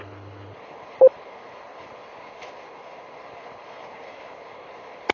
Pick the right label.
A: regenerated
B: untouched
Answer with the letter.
A